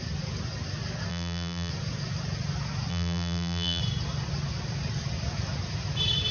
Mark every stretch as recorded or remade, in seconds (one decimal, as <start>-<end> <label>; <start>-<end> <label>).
0.0-1.1 recorded; 1.1-1.7 remade; 1.7-2.9 recorded; 2.9-3.8 remade; 3.8-6.3 recorded